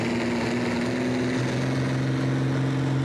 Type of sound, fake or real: real